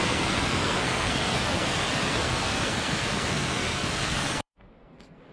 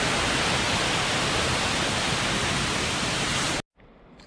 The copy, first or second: first